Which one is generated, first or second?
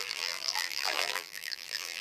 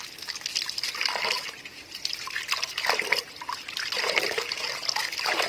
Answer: first